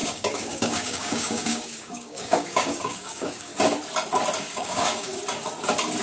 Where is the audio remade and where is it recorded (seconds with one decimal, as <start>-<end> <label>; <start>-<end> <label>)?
0.0-3.5 remade; 3.5-4.4 recorded; 4.4-5.1 remade; 5.1-6.0 recorded

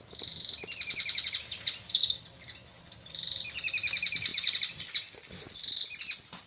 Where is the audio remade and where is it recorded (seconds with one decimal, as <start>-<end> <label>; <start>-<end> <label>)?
0.0-6.5 recorded